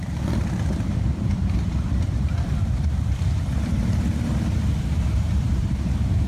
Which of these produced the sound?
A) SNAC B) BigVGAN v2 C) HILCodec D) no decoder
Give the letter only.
B